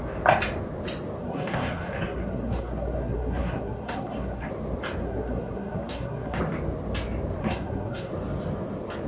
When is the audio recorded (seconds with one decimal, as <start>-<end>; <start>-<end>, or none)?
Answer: 0.0-1.2; 4.5-5.0; 6.4-7.4; 8.1-9.1